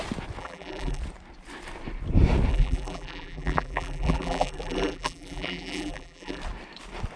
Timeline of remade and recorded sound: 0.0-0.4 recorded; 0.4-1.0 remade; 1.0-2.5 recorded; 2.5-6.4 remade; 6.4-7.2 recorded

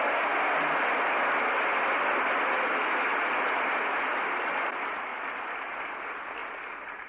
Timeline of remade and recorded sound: 0.0-3.1 recorded; 3.1-3.7 remade; 3.7-5.1 recorded; 5.1-5.8 remade; 5.8-6.4 recorded; 6.4-7.1 remade

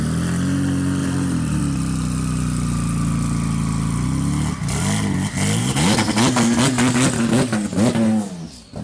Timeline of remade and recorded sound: 0.0-1.0 recorded; 1.0-1.6 remade; 1.6-5.6 recorded; 5.6-6.1 remade; 6.1-8.8 recorded

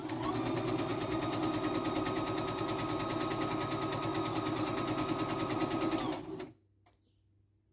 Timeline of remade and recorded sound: 0.0-7.7 recorded